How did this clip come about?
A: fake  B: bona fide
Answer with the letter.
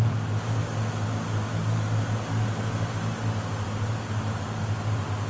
B